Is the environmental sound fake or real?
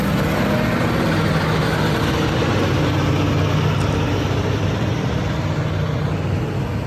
real